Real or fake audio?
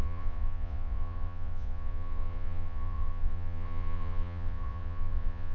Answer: fake